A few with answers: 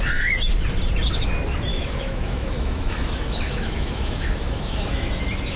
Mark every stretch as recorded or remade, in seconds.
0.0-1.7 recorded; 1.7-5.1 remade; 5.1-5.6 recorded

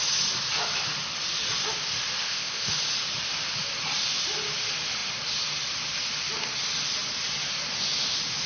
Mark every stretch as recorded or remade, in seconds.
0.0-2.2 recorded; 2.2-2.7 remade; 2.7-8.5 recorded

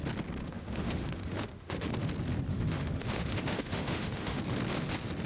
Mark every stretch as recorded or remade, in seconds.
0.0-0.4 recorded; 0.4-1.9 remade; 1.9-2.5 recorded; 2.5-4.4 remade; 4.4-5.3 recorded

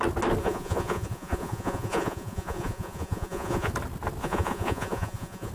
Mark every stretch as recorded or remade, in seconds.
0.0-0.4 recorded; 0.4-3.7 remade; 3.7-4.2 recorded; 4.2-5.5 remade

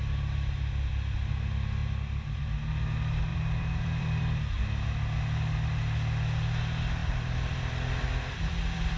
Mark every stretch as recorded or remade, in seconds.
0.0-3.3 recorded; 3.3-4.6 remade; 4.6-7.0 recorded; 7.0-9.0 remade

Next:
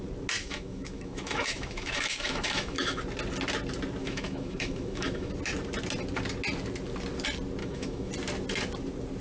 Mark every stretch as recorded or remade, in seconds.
0.0-0.4 recorded; 0.4-3.0 remade; 3.0-4.0 recorded; 4.0-5.3 remade; 5.3-7.6 recorded; 7.6-8.1 remade; 8.1-9.2 recorded

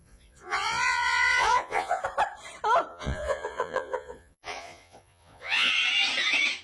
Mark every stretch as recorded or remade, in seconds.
0.0-2.0 remade; 2.0-2.9 recorded; 2.9-5.7 remade; 5.7-6.6 recorded